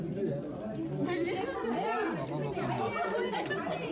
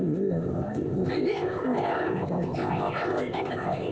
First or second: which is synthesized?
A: second